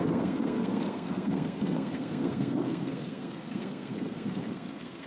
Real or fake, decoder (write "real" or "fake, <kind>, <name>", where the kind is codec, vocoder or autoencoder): fake, codec, SNAC